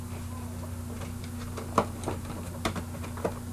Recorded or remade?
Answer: recorded